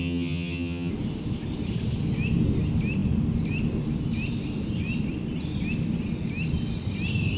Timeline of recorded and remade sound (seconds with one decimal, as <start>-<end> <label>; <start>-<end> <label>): 0.0-0.9 remade; 0.9-7.4 recorded